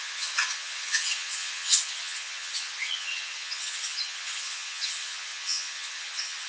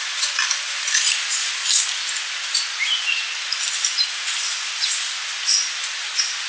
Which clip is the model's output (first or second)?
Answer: first